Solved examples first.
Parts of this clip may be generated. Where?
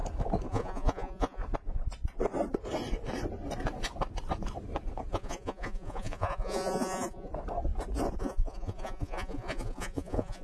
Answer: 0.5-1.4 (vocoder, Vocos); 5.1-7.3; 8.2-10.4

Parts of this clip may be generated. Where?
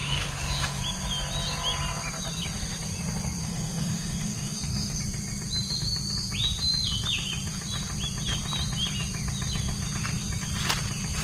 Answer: 0.0-0.8 (autoencoder, DAC-VAE); 3.4-5.0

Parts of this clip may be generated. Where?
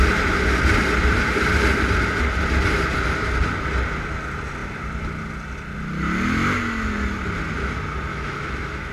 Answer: 8.1-8.9 (autoencoder, DAC-VAE)